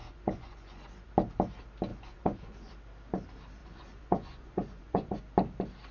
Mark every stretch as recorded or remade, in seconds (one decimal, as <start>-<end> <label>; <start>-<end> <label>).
0.0-1.1 remade; 1.1-1.9 recorded; 1.9-2.7 remade; 2.7-3.6 recorded; 3.6-5.2 remade; 5.2-5.9 recorded